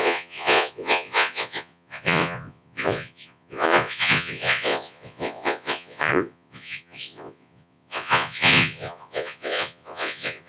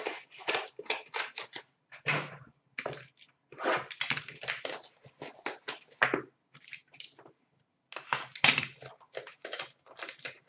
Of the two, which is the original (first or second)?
second